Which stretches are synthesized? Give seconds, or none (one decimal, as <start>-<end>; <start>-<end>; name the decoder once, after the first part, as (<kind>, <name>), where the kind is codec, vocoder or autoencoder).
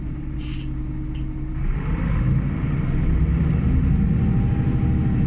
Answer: none